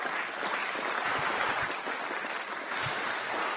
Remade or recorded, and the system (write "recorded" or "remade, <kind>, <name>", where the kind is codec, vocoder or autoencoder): recorded